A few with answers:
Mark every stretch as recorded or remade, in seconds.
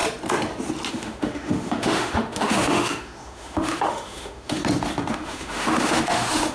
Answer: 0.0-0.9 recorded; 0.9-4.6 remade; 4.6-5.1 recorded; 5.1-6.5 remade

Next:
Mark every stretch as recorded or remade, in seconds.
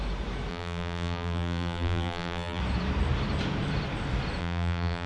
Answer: 0.0-0.5 recorded; 0.5-2.6 remade; 2.6-4.4 recorded; 4.4-5.1 remade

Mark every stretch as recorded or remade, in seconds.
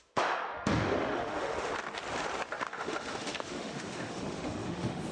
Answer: 0.0-1.7 remade; 1.7-2.6 recorded; 2.6-5.1 remade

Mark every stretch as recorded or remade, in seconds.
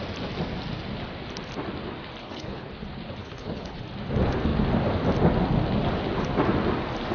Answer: 0.0-2.2 recorded; 2.2-2.7 remade; 2.7-3.2 recorded; 3.2-3.8 remade; 3.8-7.1 recorded